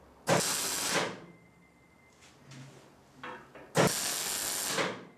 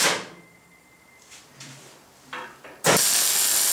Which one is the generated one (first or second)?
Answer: second